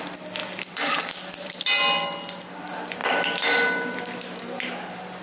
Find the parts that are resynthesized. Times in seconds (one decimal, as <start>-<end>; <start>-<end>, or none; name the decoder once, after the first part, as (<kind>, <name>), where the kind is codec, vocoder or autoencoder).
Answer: 0.4-1.5 (vocoder, BigVGAN v2)